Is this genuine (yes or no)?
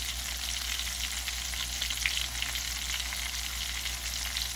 yes